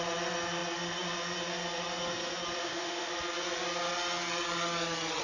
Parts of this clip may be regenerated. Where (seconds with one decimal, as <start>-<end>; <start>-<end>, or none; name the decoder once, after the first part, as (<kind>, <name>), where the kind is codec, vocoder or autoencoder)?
2.6-3.1 (autoencoder, DAC-VAE)